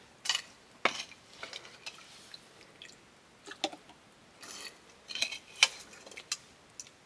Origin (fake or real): real